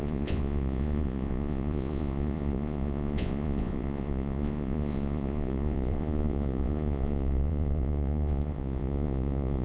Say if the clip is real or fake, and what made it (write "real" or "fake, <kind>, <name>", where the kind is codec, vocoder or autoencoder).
fake, vocoder, Vocos